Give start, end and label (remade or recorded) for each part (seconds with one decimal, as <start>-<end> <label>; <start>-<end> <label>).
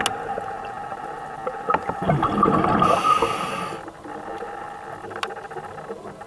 0.0-1.8 recorded; 1.8-2.3 remade; 2.3-6.3 recorded